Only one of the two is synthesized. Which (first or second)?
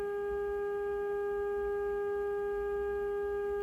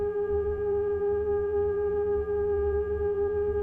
second